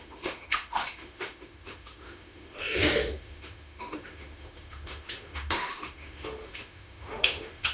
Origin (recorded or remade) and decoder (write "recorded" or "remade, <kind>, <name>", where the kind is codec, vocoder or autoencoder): remade, autoencoder, DAC-VAE